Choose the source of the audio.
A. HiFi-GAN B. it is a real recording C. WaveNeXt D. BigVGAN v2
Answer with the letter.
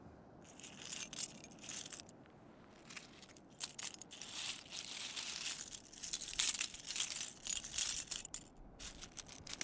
B